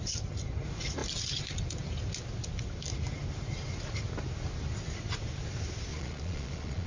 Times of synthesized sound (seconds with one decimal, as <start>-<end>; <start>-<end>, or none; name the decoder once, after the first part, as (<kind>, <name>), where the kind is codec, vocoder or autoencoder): 5.9-6.9 (vocoder, Vocos)